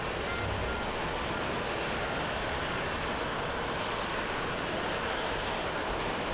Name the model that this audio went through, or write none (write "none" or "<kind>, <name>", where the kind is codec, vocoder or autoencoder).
none